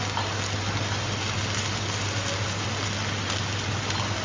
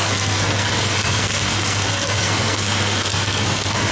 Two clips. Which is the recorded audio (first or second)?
first